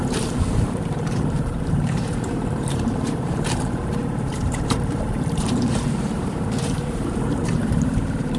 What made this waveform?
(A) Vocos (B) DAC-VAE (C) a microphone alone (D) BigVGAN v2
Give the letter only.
D